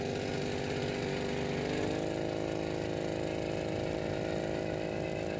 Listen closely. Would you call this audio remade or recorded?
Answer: recorded